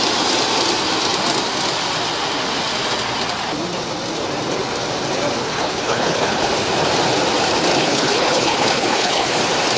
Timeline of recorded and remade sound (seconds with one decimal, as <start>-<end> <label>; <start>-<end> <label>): 0.0-5.4 recorded; 5.4-6.5 remade; 6.5-7.8 recorded; 7.8-9.4 remade; 9.4-9.8 recorded